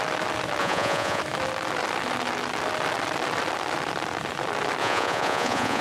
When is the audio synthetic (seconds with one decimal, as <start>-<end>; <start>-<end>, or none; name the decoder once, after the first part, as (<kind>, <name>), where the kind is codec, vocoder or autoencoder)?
0.6-1.2 (vocoder, Vocos); 4.8-5.8